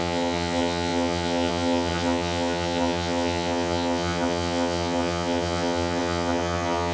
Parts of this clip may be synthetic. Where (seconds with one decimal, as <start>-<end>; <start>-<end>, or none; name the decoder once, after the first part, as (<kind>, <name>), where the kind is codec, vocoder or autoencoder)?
0.0-6.9 (vocoder, HiFi-GAN)

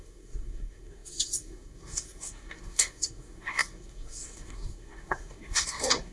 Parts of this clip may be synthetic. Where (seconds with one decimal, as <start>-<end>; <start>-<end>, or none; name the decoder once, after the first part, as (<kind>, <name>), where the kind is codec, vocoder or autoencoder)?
0.0-6.1 (codec, SNAC)

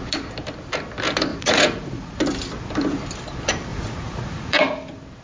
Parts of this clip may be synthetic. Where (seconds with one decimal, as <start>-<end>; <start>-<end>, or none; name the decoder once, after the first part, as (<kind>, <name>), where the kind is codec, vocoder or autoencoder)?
1.3-2.2 (vocoder, Vocos); 3.7-4.6